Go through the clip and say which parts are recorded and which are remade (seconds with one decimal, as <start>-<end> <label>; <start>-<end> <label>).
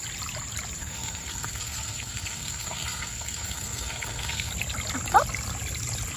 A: 0.0-0.8 recorded; 0.8-4.5 remade; 4.5-6.2 recorded